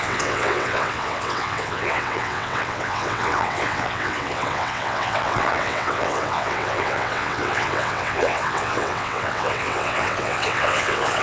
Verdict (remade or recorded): remade